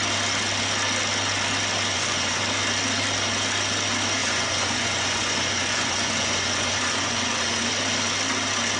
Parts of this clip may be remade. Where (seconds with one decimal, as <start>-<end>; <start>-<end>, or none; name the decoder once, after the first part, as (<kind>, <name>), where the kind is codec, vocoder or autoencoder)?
1.9-2.4 (vocoder, Vocos); 4.2-7.7